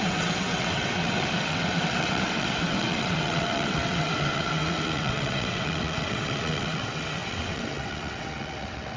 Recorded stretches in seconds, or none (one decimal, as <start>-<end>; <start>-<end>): none